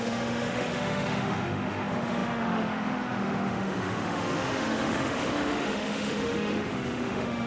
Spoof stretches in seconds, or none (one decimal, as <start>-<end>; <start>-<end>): 0.0-7.5